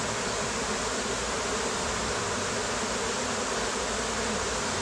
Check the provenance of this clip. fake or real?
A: fake